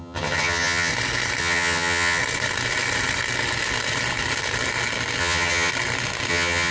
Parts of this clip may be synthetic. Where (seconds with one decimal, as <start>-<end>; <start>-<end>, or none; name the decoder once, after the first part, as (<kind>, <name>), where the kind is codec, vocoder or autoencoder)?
0.0-0.9 (vocoder, HiFi-GAN); 1.4-2.2; 5.2-5.7; 6.3-6.7